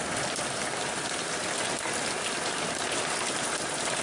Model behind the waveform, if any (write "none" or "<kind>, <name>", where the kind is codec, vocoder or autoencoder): none